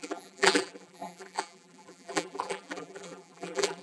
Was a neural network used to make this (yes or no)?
yes